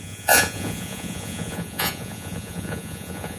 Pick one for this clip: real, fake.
fake